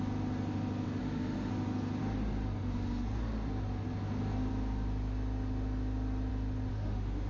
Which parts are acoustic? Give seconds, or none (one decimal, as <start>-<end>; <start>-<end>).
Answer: 0.0-1.0; 1.5-6.7